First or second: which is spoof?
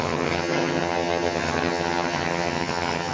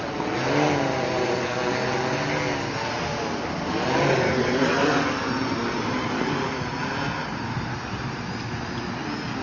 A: first